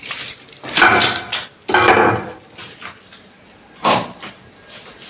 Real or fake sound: real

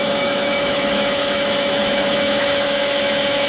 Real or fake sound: fake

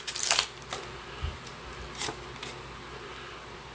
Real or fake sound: real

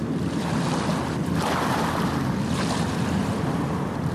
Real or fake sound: real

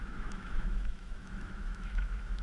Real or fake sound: fake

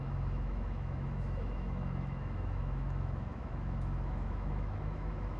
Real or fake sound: fake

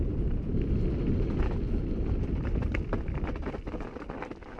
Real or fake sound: real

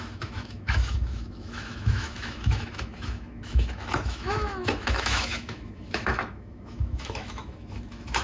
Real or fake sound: fake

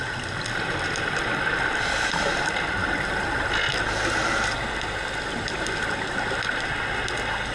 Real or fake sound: real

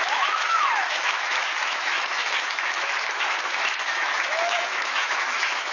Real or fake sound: fake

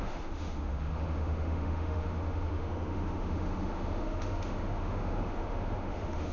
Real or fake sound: fake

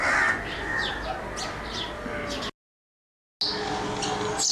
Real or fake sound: real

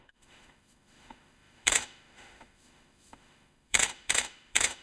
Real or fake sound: fake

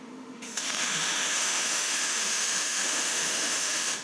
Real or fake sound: fake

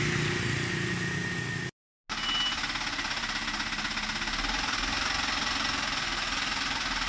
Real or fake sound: real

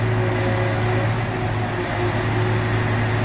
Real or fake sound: real